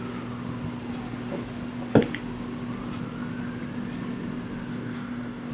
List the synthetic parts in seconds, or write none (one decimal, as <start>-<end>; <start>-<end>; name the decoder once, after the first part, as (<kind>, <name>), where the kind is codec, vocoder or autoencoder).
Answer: 4.7-5.5 (codec, DAC)